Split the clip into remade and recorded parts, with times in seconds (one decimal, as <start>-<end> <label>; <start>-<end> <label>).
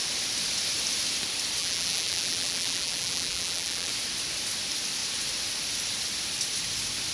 0.0-1.6 recorded; 1.6-3.9 remade; 3.9-7.1 recorded